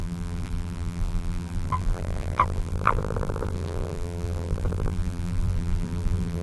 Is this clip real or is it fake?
fake